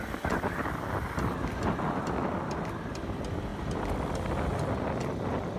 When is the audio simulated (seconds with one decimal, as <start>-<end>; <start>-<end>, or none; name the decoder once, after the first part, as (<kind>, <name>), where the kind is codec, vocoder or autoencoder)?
none